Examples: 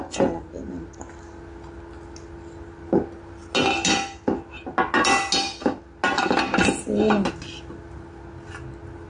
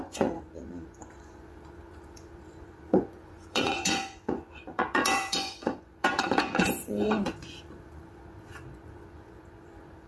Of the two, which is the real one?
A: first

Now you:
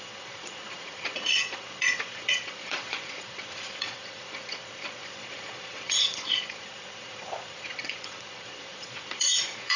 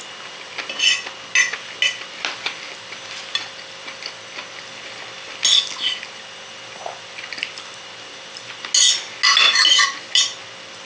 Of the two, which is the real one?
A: second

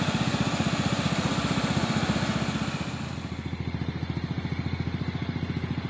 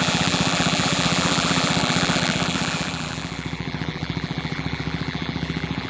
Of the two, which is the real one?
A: first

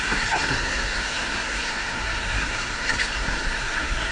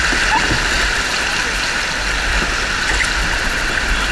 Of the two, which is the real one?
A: second